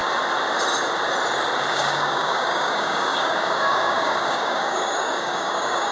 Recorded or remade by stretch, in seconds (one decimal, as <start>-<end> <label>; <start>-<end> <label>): 0.0-1.7 recorded; 1.7-5.9 remade